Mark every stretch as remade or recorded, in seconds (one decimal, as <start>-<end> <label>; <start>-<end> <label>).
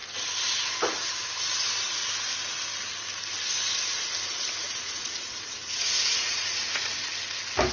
0.0-4.6 recorded; 4.6-7.1 remade; 7.1-7.7 recorded